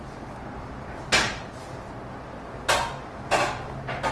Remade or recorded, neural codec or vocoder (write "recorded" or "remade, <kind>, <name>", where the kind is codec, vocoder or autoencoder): recorded